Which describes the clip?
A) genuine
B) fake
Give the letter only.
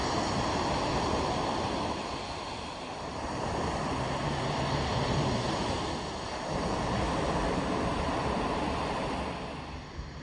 A